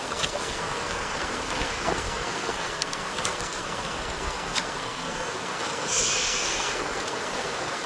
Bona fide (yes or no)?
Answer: no